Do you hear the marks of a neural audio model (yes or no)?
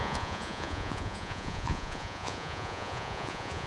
yes